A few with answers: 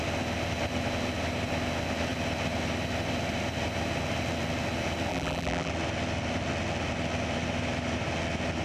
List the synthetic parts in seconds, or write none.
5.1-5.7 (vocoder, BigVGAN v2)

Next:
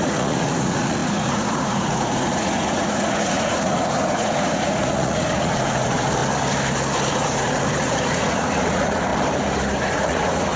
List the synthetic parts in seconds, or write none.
0.0-6.2 (vocoder, Vocos); 7.1-9.1; 9.8-10.6

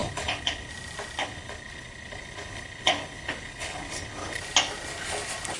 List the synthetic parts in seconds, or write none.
0.0-0.7 (codec, HILCodec); 1.2-4.4